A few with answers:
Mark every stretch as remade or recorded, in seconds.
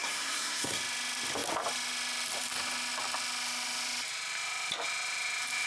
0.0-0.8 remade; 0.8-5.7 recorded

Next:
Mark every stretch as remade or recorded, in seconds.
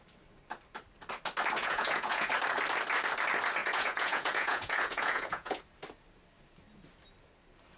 0.0-1.6 recorded; 1.6-2.3 remade; 2.3-3.6 recorded; 3.6-5.6 remade; 5.6-7.8 recorded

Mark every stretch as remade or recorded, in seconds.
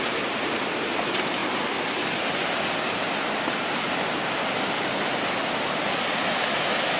0.0-7.0 recorded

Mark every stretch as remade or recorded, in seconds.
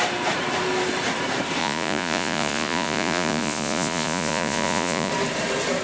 0.0-1.6 recorded; 1.6-5.1 remade; 5.1-5.8 recorded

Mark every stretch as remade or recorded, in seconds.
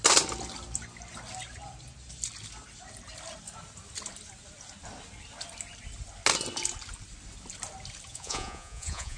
0.0-8.1 recorded; 8.1-9.2 remade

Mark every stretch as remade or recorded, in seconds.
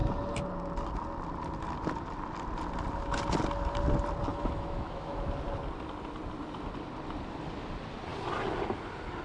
0.0-4.3 recorded; 4.3-5.2 remade; 5.2-9.2 recorded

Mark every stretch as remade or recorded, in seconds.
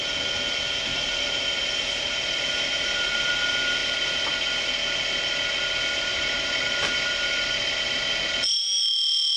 0.0-0.9 recorded; 0.9-3.3 remade; 3.3-6.1 recorded; 6.1-8.0 remade; 8.0-9.4 recorded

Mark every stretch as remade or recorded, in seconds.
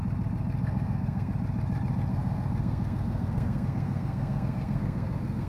0.0-0.6 recorded; 0.6-1.3 remade; 1.3-2.1 recorded; 2.1-5.5 remade